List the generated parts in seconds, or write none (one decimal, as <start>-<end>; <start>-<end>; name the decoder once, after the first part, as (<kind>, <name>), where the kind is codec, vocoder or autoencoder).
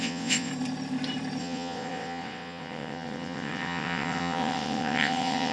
0.0-0.5 (vocoder, WaveNeXt); 1.4-5.5